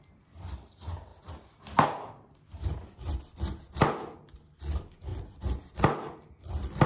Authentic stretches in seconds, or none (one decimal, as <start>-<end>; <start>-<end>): 0.0-6.9